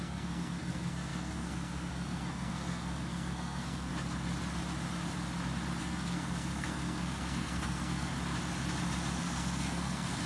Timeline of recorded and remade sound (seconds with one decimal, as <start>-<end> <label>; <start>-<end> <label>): 0.0-3.9 remade; 3.9-5.8 recorded; 5.8-8.1 remade; 8.1-9.2 recorded; 9.2-10.3 remade